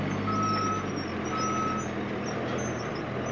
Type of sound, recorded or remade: recorded